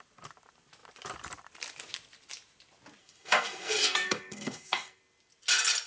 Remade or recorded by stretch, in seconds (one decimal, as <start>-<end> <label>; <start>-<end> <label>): 0.0-3.0 recorded; 3.0-5.0 remade; 5.0-5.9 recorded